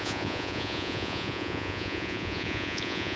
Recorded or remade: remade